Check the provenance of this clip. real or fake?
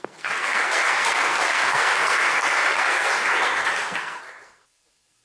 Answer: fake